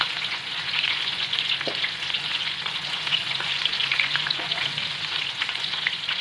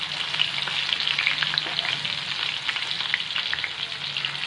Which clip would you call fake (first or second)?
first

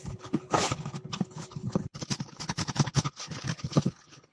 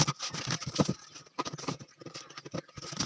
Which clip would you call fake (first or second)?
first